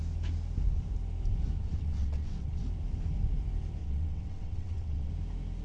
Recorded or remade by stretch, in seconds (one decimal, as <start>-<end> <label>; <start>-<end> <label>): 0.0-1.6 recorded; 1.6-2.6 remade; 2.6-3.8 recorded; 3.8-5.1 remade; 5.1-5.6 recorded